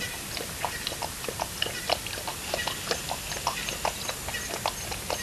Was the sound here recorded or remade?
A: recorded